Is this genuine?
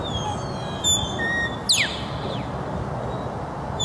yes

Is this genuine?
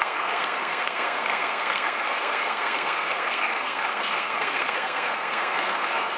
no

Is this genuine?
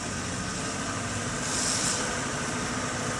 yes